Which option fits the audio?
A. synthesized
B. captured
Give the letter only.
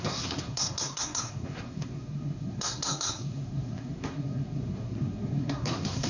A